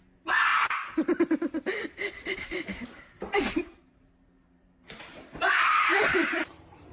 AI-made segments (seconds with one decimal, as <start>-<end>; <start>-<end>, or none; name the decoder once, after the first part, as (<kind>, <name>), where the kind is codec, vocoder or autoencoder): 0.0-0.5 (vocoder, BigVGAN v2); 2.3-6.9